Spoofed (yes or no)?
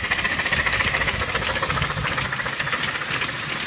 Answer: no